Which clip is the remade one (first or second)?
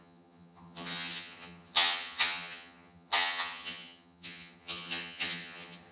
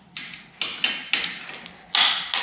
first